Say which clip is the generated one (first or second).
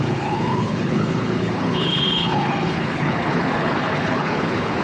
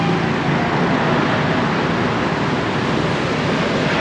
first